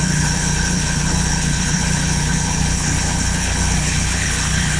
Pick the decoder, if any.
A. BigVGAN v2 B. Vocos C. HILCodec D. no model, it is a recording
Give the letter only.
C